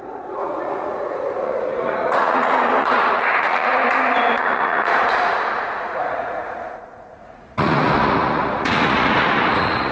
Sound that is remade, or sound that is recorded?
remade